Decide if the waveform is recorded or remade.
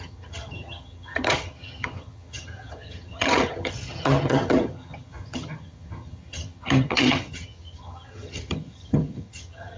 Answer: remade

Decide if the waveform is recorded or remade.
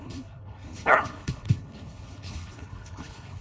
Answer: remade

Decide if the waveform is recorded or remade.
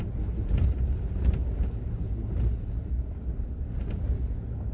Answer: recorded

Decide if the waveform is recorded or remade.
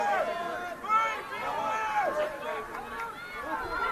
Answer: recorded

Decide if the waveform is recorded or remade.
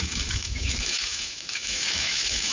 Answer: remade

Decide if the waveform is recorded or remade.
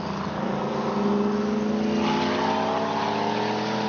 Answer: recorded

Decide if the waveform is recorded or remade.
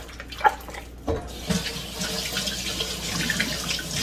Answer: recorded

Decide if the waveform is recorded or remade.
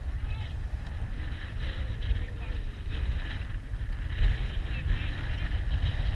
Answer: recorded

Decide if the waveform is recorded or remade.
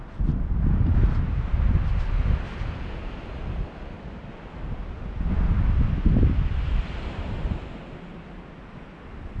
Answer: recorded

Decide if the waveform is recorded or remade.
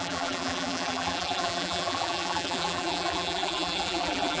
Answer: remade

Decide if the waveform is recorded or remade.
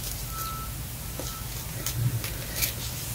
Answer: recorded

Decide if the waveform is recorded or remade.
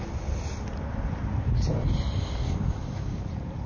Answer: recorded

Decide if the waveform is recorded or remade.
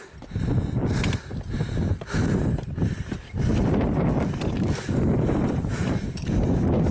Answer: recorded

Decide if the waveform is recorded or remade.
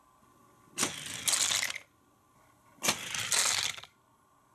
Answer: recorded